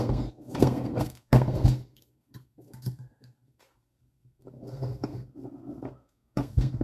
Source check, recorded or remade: remade